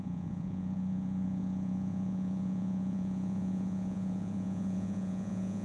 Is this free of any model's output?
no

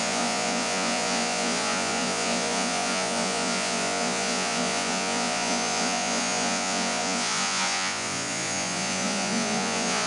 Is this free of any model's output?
no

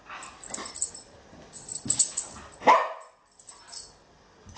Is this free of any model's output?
yes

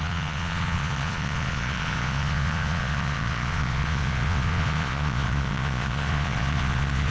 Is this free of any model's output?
no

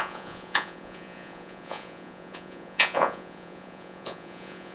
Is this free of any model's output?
no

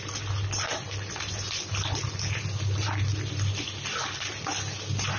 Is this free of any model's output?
yes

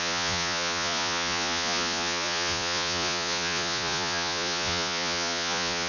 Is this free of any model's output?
no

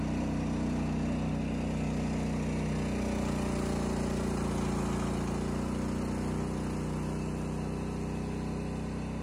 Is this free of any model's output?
yes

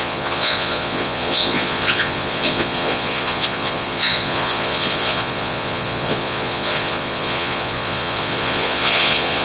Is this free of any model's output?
no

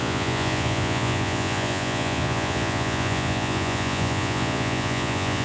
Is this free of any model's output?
no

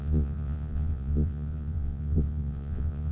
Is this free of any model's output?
no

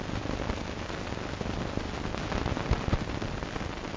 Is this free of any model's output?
yes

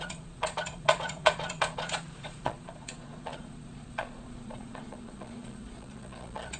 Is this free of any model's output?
no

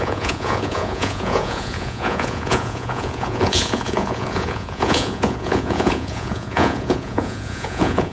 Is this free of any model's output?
no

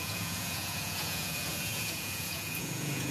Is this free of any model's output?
no